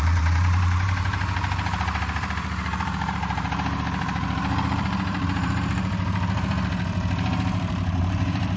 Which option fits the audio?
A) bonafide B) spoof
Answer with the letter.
B